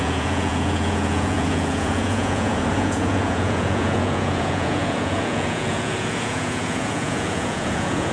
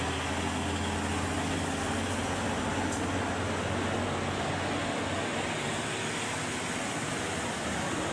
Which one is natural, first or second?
second